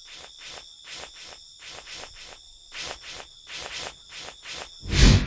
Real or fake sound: real